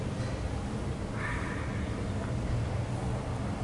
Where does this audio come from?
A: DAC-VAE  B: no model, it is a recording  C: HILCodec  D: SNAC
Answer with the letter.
B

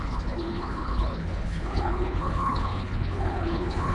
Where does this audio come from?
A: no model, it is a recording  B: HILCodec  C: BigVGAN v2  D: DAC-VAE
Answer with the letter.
B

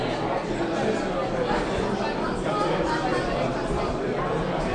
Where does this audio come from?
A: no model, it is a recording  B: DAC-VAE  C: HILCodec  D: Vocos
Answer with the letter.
A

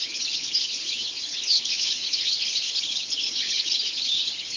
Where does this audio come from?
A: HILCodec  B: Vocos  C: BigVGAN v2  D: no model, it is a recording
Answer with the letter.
A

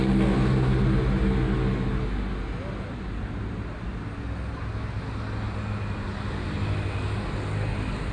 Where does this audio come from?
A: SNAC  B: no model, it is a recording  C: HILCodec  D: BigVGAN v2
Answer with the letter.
B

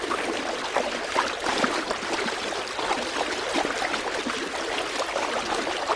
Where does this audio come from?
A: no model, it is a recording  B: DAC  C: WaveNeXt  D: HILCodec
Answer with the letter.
A